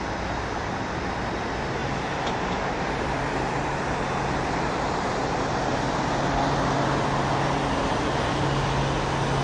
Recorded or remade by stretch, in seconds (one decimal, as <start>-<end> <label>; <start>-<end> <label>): 0.0-1.8 recorded; 1.8-3.8 remade; 3.8-9.4 recorded